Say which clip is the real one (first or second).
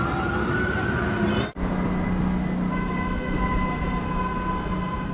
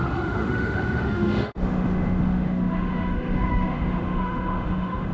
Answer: first